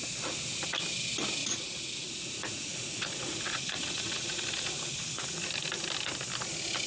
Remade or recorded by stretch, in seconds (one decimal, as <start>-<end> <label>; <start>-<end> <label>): 0.0-1.4 recorded; 1.4-5.5 remade; 5.5-6.9 recorded